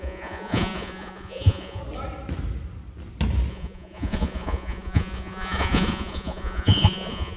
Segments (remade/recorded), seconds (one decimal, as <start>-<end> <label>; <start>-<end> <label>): 0.0-1.8 remade; 1.8-3.5 recorded; 3.5-7.4 remade